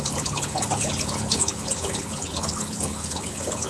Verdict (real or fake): fake